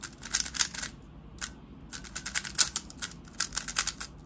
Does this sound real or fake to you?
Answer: real